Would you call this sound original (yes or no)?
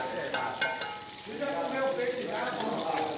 yes